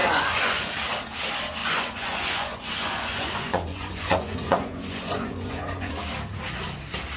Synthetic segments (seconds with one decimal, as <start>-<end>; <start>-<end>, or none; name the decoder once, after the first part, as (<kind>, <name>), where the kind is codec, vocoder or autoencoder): 0.0-0.7 (vocoder, Vocos); 1.6-5.9